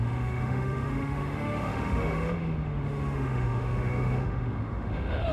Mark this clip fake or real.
fake